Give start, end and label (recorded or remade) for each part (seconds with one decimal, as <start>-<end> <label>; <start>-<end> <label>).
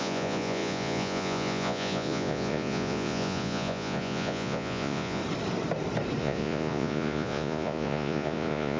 0.0-5.2 remade; 5.2-6.2 recorded; 6.2-8.8 remade